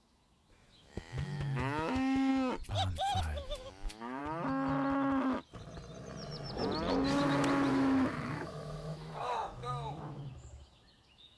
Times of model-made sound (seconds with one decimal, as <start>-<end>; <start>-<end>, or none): 0.0-2.3; 3.2-4.2; 7.7-11.4